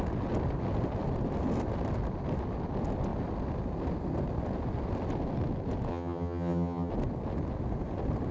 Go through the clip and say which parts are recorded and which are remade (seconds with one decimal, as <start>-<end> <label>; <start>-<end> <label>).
0.0-5.9 recorded; 5.9-6.9 remade; 6.9-8.3 recorded